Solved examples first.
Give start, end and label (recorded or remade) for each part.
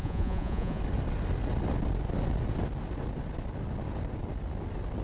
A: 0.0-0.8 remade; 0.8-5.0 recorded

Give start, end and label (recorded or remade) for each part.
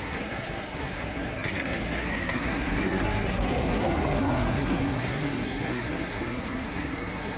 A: 0.0-7.4 remade